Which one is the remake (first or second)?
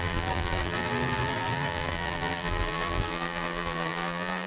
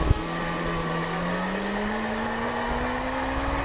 first